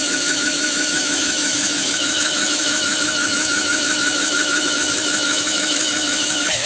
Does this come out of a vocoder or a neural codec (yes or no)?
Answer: yes